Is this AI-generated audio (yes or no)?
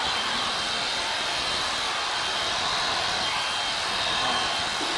no